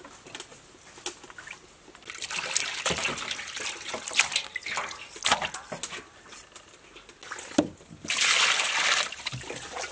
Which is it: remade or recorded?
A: recorded